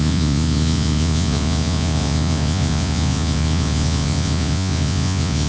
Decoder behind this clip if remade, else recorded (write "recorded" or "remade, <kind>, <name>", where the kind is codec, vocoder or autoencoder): remade, vocoder, Vocos